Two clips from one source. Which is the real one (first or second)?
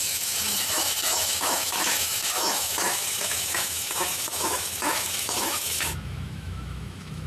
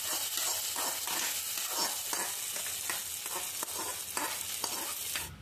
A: second